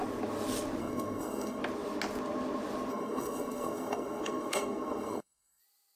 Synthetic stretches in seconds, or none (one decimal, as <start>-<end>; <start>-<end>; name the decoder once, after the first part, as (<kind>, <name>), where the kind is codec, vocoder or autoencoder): 0.8-1.6 (codec, SNAC); 2.9-5.6